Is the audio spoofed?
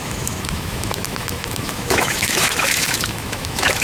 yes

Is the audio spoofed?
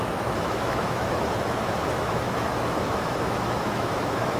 yes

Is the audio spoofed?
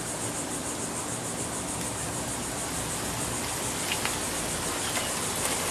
no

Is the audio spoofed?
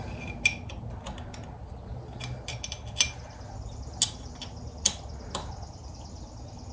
no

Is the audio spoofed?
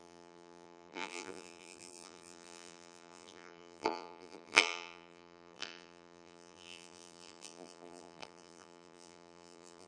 yes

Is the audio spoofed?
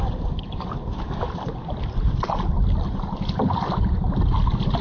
no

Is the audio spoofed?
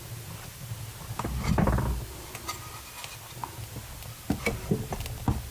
no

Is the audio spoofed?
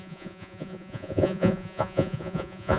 yes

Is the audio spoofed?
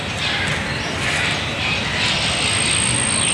no